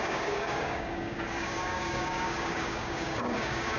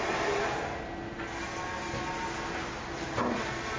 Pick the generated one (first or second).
first